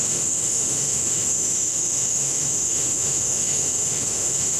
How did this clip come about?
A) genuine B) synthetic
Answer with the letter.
B